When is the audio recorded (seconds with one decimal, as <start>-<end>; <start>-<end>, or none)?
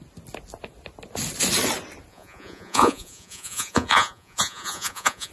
0.0-2.1